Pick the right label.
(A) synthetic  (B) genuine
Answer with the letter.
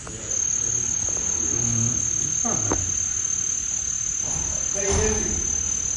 B